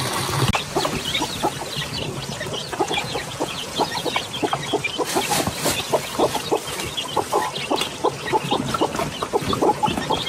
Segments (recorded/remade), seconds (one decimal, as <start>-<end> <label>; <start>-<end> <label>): 0.0-2.6 recorded; 2.6-4.1 remade; 4.1-10.3 recorded